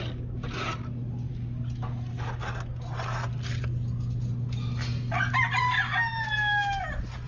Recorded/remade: recorded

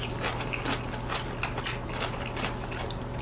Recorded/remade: recorded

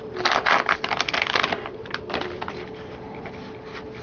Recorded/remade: recorded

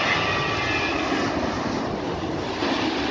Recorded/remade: recorded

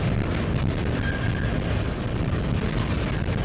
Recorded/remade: recorded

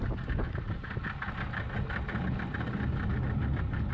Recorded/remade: recorded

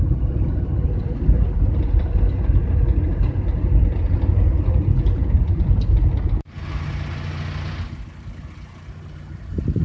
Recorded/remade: recorded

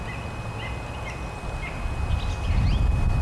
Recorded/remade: recorded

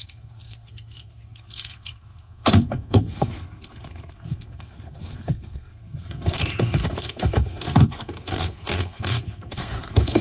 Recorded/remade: remade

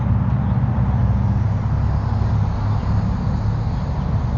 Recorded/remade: recorded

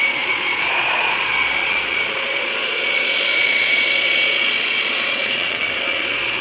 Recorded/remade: remade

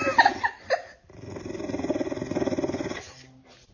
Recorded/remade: recorded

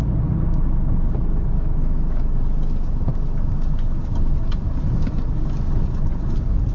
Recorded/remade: recorded